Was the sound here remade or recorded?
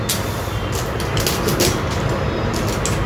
recorded